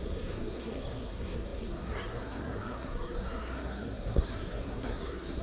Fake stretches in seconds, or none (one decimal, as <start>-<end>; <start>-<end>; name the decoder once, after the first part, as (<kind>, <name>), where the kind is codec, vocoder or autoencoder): 0.0-5.4 (codec, SNAC)